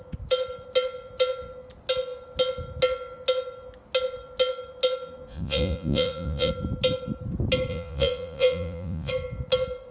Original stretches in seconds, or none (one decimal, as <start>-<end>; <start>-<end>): 0.0-5.3; 6.5-7.7; 9.1-9.9